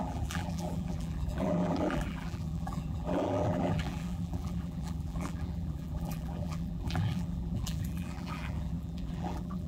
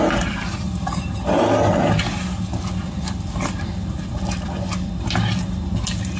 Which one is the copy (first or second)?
first